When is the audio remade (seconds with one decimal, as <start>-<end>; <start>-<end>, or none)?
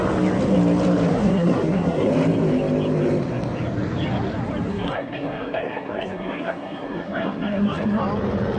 1.1-2.1; 4.7-8.0